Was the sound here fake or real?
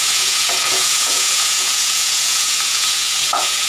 fake